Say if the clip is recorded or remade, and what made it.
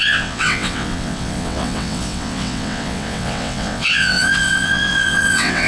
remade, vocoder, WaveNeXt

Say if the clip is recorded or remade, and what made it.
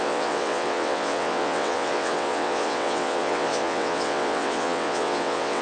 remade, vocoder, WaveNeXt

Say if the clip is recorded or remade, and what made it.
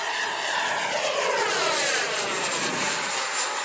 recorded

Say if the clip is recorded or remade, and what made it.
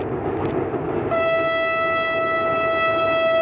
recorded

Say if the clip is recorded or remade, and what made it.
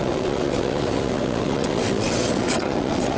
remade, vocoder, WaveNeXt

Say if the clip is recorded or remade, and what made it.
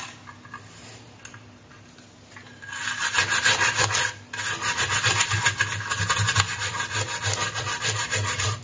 recorded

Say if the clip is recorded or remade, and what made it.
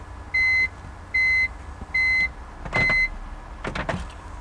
recorded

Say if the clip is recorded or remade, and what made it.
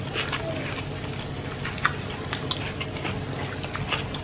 recorded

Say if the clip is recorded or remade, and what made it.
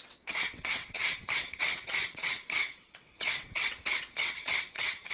remade, vocoder, WaveNeXt